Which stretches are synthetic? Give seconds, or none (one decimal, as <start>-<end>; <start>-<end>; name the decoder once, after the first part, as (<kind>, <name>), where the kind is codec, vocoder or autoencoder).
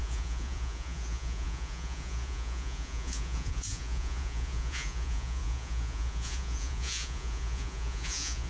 0.0-8.5 (vocoder, Vocos)